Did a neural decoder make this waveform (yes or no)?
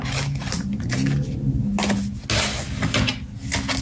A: no